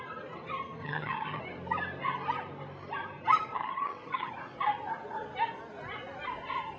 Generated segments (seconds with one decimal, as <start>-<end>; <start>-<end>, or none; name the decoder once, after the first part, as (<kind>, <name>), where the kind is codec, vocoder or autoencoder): 0.8-1.4 (vocoder, HiFi-GAN); 3.5-4.3